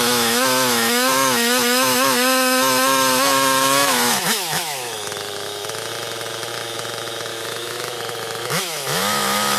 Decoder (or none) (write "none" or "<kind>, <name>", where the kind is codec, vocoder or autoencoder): autoencoder, DAC-VAE